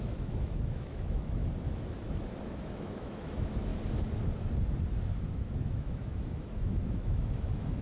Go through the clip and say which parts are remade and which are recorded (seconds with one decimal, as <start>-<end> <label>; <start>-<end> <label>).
0.0-1.4 remade; 1.4-2.4 recorded; 2.4-3.7 remade; 3.7-5.3 recorded; 5.3-7.8 remade